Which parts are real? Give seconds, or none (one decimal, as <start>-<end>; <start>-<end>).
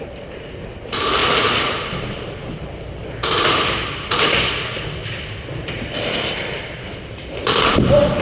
0.0-8.2